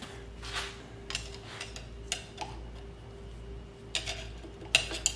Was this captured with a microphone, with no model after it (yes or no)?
yes